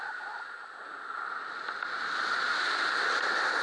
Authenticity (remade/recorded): recorded